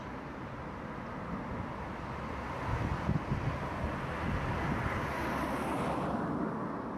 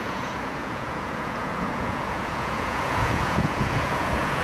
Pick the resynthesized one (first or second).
second